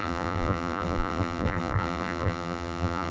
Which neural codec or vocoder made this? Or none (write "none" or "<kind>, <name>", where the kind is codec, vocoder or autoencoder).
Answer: vocoder, BigVGAN v2